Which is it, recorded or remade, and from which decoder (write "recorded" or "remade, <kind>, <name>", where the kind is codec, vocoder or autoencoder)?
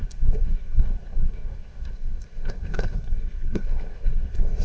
remade, codec, SNAC